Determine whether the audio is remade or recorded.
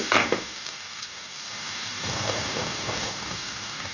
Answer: remade